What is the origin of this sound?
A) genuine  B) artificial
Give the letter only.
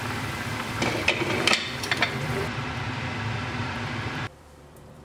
B